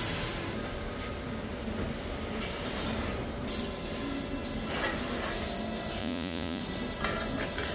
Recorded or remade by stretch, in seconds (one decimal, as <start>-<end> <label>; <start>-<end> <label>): 0.0-6.0 recorded; 6.0-6.6 remade; 6.6-7.7 recorded